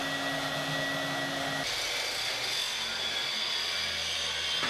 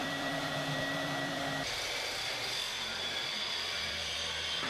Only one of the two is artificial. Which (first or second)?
second